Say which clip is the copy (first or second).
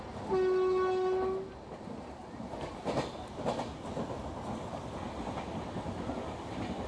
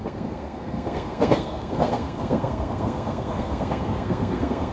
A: second